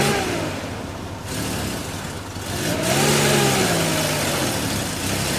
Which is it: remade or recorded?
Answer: recorded